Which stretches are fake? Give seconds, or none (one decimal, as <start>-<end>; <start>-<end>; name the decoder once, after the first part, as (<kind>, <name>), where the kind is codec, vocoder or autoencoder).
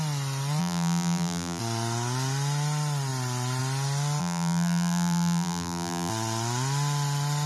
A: 0.6-1.6 (vocoder, BigVGAN v2); 4.2-6.1